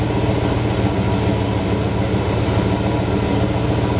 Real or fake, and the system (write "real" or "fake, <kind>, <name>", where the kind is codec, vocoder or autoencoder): real